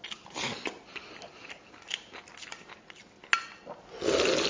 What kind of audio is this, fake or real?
real